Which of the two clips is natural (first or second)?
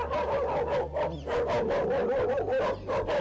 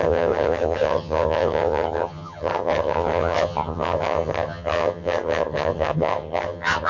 first